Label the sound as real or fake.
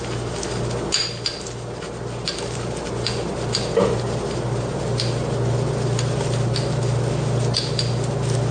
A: real